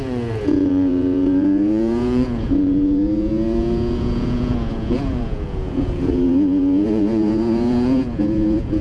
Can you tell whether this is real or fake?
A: fake